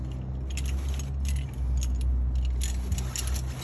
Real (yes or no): yes